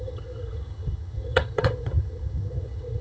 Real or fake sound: fake